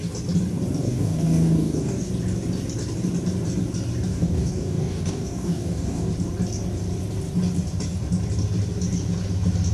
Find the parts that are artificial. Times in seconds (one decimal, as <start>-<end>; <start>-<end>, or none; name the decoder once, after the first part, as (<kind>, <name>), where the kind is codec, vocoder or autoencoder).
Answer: 0.8-2.1 (codec, DAC); 4.1-6.1